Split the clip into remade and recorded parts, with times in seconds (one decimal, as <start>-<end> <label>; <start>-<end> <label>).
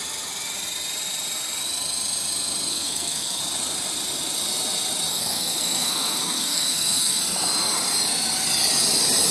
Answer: 0.0-2.7 recorded; 2.7-3.4 remade; 3.4-5.1 recorded; 5.1-7.2 remade; 7.2-9.3 recorded